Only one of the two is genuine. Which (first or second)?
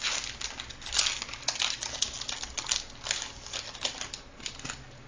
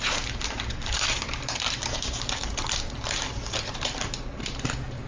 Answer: first